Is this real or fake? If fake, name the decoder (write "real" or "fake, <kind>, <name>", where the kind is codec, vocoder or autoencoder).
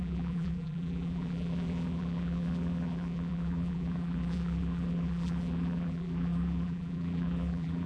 fake, vocoder, BigVGAN v2